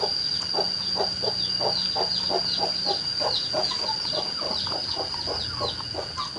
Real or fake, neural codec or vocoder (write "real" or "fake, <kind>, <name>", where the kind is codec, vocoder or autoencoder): real